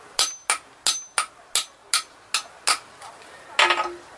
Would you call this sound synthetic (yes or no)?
no